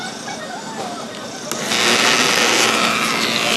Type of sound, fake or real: real